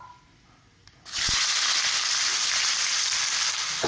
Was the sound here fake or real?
real